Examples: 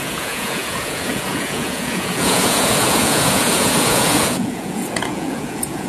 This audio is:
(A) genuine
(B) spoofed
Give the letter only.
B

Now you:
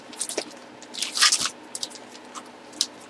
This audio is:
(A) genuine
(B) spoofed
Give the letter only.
A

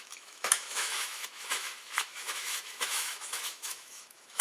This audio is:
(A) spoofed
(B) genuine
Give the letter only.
A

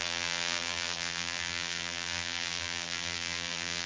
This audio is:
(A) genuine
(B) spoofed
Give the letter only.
B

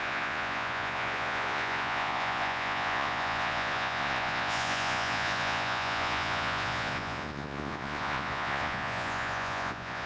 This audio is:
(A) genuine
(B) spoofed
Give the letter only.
B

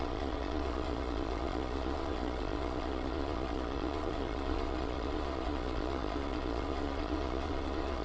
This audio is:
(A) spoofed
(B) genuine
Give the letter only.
A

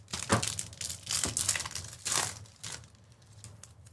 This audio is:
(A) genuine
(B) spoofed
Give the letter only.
A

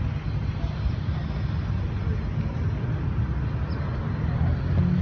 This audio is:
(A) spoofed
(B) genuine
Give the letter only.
B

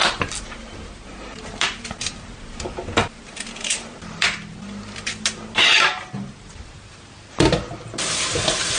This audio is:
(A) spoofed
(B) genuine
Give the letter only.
B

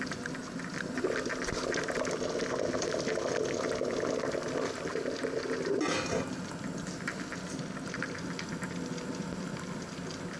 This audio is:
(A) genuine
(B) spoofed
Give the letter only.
A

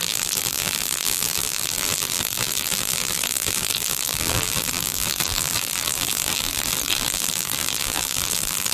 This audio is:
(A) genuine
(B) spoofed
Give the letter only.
B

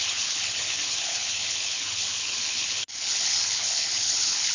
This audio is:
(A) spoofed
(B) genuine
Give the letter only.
A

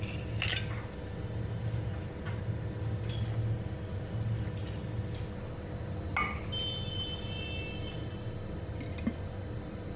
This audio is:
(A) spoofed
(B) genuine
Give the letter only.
B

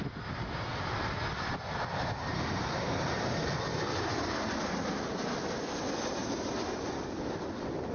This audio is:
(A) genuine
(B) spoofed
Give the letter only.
A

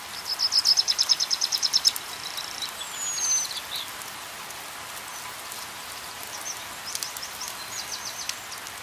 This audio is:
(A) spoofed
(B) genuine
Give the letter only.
B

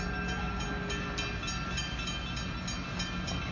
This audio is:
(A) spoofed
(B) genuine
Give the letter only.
B